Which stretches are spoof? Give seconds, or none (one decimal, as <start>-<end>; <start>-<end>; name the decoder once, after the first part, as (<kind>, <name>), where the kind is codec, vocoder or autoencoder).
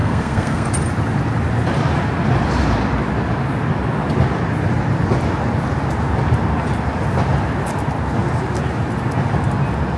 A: 0.0-0.7 (codec, SNAC)